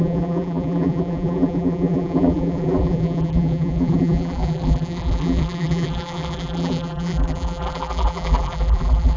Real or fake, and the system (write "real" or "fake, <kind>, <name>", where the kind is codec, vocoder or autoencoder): fake, vocoder, BigVGAN v2